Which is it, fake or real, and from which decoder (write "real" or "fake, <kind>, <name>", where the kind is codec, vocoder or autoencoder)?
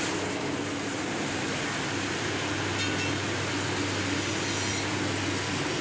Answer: real